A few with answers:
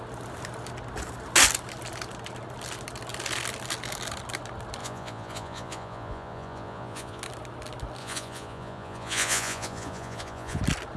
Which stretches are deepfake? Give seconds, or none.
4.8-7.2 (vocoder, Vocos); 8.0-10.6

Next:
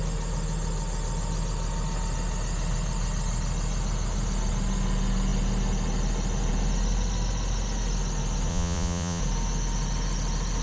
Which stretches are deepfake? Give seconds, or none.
8.5-9.2 (vocoder, Vocos)

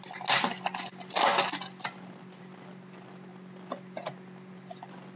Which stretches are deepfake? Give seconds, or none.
none

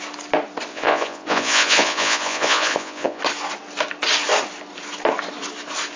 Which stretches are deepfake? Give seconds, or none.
0.7-3.2 (vocoder, Vocos)

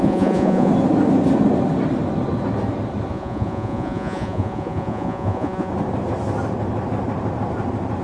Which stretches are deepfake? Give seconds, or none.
0.0-0.7 (vocoder, Vocos); 3.1-5.7

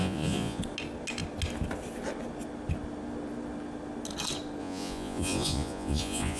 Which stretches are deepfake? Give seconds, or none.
0.0-0.6 (vocoder, Vocos); 4.6-6.4

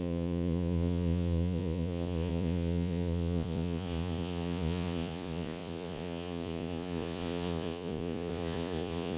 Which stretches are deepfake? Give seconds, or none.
0.0-9.2 (vocoder, Vocos)